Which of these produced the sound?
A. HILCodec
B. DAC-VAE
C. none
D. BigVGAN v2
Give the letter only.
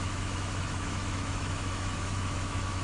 B